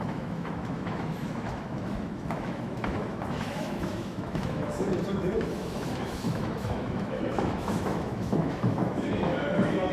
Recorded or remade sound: remade